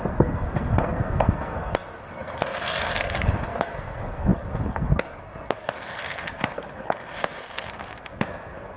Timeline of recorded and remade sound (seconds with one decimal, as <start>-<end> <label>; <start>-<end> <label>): 0.0-8.8 remade